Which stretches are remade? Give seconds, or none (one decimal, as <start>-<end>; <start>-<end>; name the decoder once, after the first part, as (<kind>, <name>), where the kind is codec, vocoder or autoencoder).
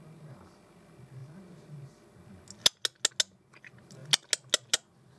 none